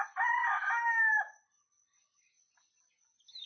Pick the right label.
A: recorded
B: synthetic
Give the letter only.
A